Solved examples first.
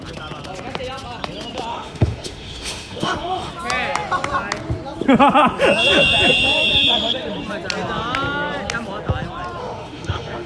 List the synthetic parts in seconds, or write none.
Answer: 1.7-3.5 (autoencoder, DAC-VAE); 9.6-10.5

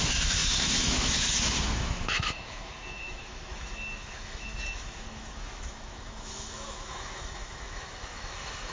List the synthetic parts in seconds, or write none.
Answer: 0.0-8.7 (autoencoder, DAC-VAE)